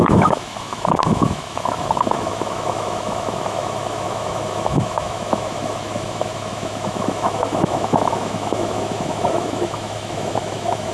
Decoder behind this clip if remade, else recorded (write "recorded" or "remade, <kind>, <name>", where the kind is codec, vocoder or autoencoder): remade, autoencoder, DAC-VAE